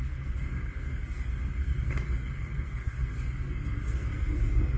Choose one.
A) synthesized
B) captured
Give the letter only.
A